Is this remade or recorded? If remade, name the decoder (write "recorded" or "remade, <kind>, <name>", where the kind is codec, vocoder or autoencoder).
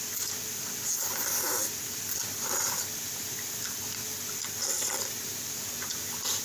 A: remade, vocoder, BigVGAN v2